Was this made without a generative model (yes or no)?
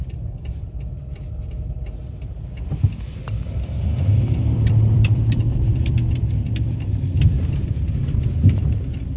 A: no